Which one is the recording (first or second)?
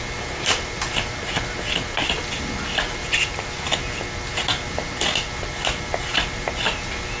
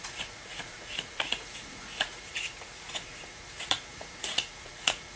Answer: first